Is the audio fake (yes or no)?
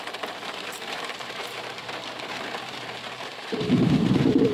yes